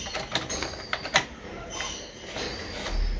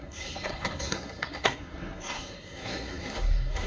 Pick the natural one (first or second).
first